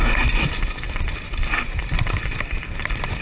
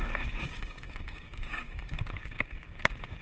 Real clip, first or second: first